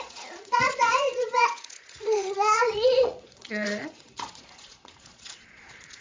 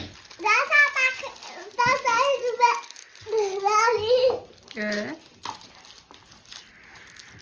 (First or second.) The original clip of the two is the second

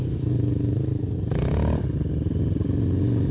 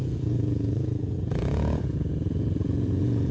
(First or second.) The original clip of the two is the first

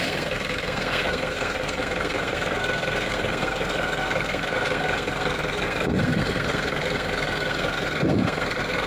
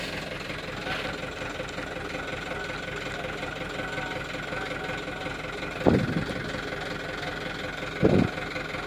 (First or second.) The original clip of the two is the second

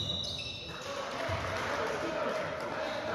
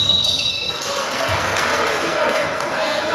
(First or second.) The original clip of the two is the first